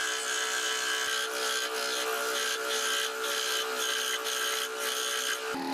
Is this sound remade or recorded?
recorded